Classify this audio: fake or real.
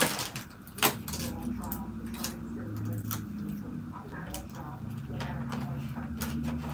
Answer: real